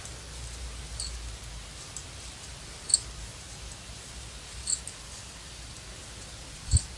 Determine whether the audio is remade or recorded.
recorded